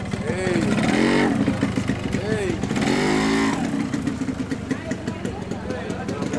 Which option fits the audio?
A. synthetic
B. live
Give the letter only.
B